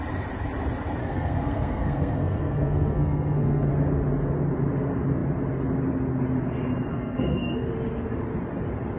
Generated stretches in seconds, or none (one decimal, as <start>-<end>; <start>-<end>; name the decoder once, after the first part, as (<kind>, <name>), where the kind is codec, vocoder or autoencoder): 1.0-3.7 (codec, SNAC); 6.9-7.7